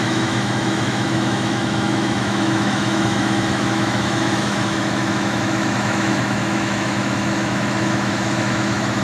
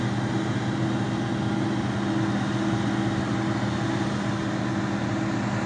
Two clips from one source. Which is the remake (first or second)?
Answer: first